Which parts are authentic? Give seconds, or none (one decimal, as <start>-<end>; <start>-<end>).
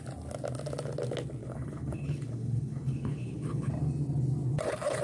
0.0-1.4; 3.7-5.0